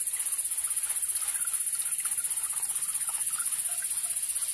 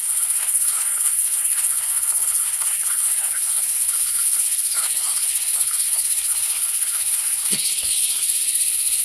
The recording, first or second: first